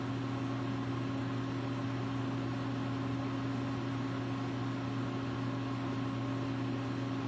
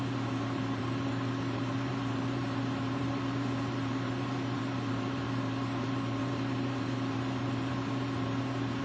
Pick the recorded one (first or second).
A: first